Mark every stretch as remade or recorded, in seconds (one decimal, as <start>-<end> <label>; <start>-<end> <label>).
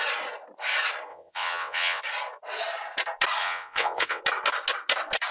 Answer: 0.0-1.1 recorded; 1.1-2.0 remade; 2.0-3.4 recorded; 3.4-4.2 remade; 4.2-5.3 recorded